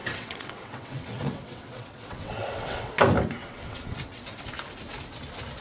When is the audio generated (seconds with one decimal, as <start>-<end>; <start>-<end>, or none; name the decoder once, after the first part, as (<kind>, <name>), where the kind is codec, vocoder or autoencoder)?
0.0-2.9 (vocoder, WaveNeXt); 3.4-4.4